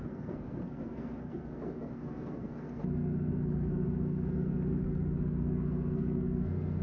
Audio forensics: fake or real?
fake